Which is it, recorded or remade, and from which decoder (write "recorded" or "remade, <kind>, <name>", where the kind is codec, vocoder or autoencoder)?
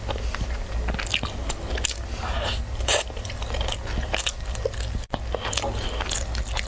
recorded